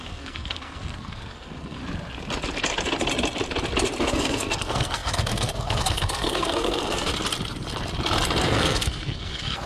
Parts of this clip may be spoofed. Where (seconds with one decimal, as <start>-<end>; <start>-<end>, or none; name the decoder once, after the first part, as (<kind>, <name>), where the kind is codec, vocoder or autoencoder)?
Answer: 0.0-1.8 (codec, SNAC); 4.0-7.1; 8.4-9.7